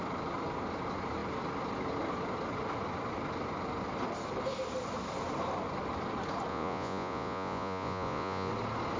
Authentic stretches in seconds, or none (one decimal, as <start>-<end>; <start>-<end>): 0.0-6.5; 8.5-9.0